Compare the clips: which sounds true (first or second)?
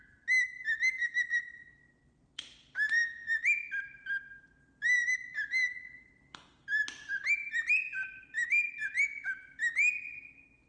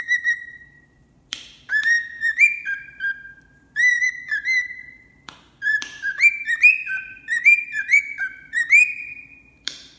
first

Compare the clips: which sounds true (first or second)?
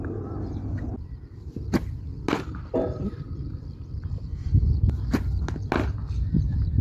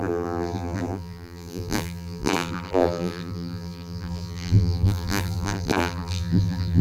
first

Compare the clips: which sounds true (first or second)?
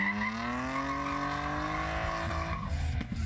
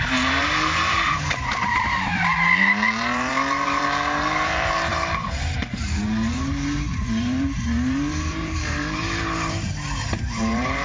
first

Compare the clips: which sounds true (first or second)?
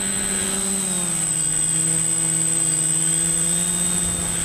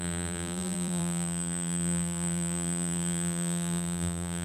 first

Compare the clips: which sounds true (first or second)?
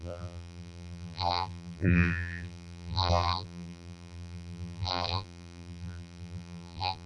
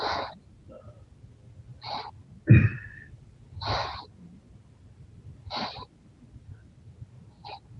second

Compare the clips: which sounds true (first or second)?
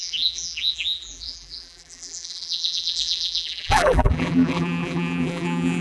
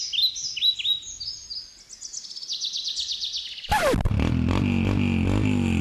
second